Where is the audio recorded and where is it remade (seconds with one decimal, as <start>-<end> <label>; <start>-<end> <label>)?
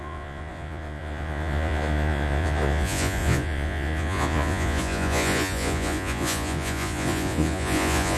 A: 0.0-8.2 remade